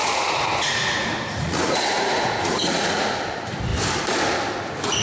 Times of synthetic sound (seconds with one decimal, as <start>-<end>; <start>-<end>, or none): 0.0-3.0